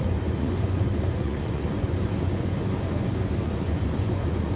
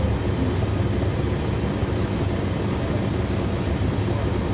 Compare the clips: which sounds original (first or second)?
second